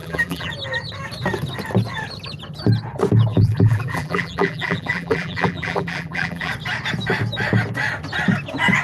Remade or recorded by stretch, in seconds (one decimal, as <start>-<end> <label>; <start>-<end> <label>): 0.0-0.5 remade; 0.5-3.3 recorded; 3.3-6.5 remade; 6.5-8.8 recorded

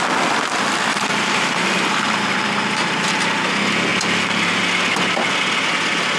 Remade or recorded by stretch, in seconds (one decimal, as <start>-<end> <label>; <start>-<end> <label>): 0.0-0.9 recorded; 0.9-3.2 remade; 3.2-3.9 recorded; 3.9-4.6 remade; 4.6-6.2 recorded

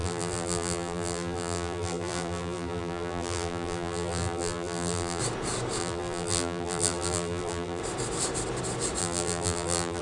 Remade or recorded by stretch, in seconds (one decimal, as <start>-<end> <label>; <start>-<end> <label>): 0.0-5.2 remade; 5.2-5.8 recorded; 5.8-7.8 remade; 7.8-9.0 recorded; 9.0-10.0 remade

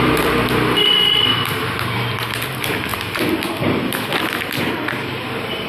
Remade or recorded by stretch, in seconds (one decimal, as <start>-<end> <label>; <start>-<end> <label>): 0.0-5.7 remade

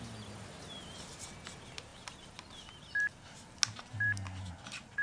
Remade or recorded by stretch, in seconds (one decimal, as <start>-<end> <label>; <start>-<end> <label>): 0.0-5.0 recorded

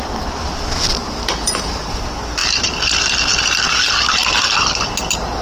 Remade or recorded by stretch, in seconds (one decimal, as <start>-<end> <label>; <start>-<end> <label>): 0.0-1.4 recorded; 1.4-2.0 remade; 2.0-5.4 recorded